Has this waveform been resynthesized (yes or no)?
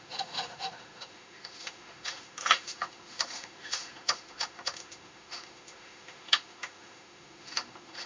yes